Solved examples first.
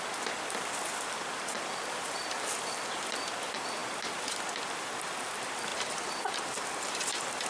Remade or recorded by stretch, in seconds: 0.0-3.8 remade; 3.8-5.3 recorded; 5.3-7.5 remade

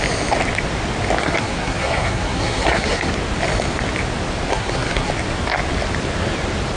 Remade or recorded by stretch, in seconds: 0.0-1.2 recorded; 1.2-3.1 remade; 3.1-4.5 recorded; 4.5-5.1 remade; 5.1-6.8 recorded